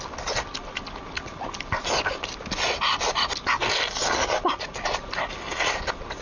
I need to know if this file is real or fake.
real